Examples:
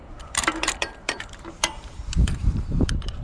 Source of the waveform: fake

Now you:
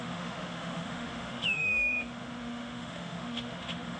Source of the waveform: fake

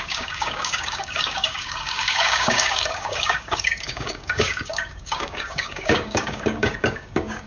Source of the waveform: fake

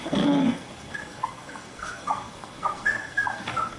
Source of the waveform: fake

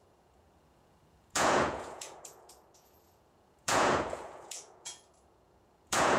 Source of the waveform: fake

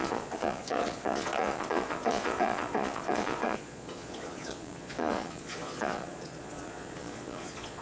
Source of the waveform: fake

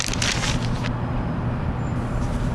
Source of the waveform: real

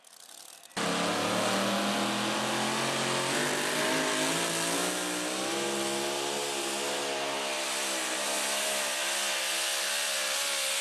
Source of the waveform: real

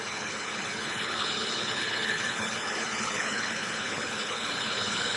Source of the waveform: fake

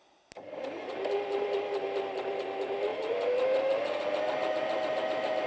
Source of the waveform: real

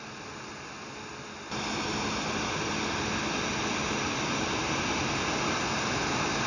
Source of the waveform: real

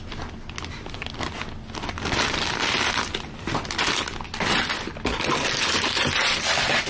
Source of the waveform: real